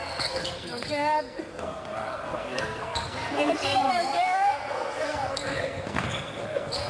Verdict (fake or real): fake